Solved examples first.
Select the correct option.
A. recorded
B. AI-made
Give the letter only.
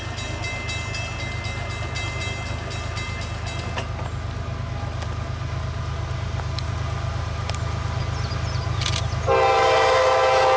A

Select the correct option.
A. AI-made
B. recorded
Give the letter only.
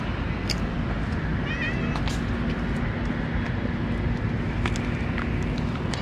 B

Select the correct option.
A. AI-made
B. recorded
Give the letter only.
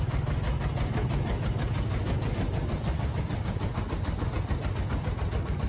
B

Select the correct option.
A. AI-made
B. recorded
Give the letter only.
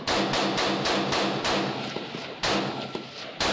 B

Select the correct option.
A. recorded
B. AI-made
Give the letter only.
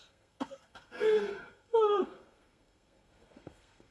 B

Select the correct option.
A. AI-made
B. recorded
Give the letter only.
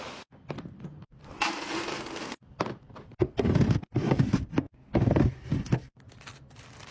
B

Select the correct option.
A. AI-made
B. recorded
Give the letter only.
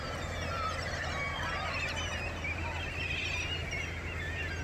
B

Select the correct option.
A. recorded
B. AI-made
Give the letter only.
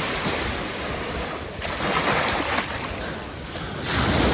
A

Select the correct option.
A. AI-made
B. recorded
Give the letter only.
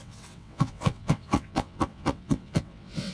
A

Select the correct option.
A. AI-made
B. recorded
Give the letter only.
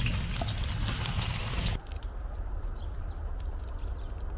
B